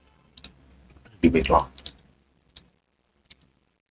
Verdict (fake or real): real